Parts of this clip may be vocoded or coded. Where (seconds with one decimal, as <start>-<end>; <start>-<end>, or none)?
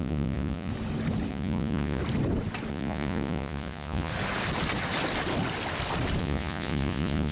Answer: 0.0-0.7; 1.3-2.0; 2.7-4.1; 6.2-7.3